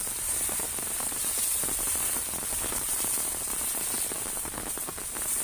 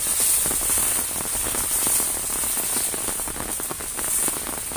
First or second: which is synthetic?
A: first